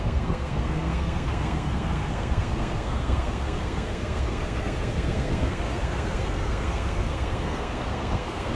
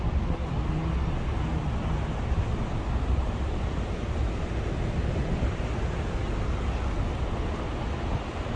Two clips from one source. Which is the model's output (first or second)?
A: first